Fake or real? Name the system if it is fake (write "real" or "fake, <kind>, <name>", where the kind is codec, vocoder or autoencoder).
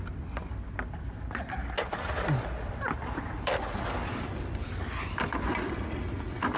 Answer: real